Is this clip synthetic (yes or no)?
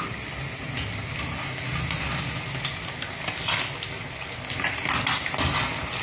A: no